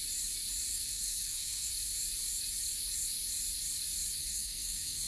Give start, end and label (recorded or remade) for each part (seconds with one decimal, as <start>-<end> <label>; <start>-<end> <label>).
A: 0.0-0.7 recorded; 0.7-1.7 remade; 1.7-4.2 recorded; 4.2-5.1 remade